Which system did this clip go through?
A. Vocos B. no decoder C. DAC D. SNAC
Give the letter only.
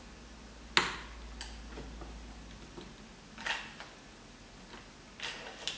B